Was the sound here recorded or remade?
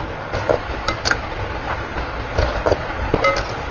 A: recorded